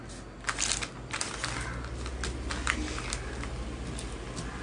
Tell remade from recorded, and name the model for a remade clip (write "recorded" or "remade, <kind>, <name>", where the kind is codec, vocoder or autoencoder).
recorded